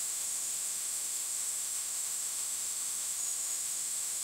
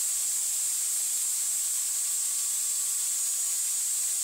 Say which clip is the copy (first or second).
first